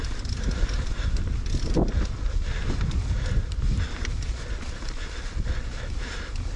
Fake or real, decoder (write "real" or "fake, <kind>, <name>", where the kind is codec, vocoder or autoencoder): real